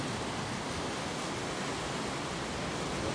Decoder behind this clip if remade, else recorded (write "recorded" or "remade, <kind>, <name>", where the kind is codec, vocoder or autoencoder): recorded